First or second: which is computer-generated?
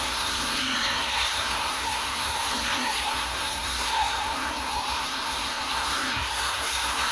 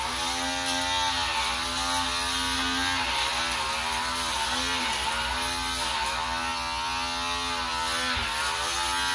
first